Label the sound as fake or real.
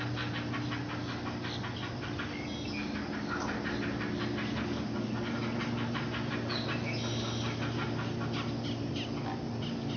real